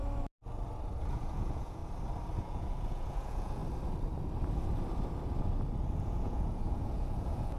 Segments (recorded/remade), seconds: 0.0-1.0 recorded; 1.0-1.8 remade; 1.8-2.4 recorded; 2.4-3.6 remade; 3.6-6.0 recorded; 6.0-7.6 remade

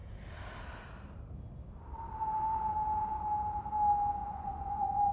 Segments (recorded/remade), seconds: 0.0-4.2 recorded; 4.2-5.1 remade

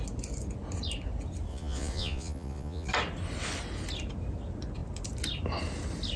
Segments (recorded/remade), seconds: 0.0-1.5 recorded; 1.5-2.9 remade; 2.9-6.2 recorded